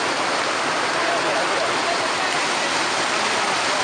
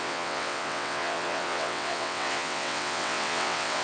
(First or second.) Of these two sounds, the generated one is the second